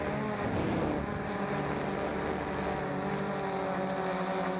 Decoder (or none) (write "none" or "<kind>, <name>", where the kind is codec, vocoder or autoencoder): none